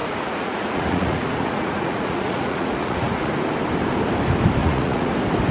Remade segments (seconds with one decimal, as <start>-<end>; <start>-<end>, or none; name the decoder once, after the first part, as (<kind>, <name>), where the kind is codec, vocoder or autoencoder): 0.0-3.3 (vocoder, Vocos); 4.6-5.1